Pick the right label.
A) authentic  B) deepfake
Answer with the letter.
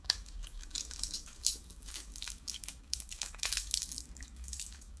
B